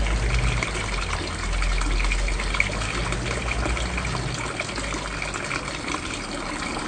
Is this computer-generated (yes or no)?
no